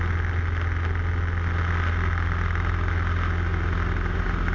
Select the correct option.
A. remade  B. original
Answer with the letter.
B